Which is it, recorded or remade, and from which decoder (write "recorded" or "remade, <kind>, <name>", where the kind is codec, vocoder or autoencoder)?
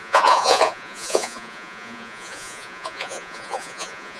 remade, vocoder, Vocos